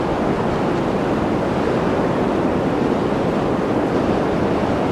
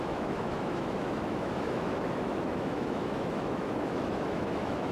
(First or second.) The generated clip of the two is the second